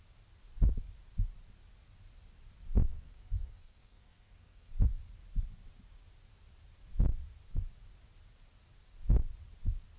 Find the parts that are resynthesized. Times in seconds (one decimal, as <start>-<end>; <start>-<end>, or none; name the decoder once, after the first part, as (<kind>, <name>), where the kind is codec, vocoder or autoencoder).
2.9-4.7 (codec, SNAC)